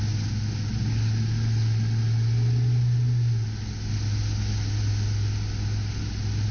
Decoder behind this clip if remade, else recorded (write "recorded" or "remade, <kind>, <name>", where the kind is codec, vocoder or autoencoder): recorded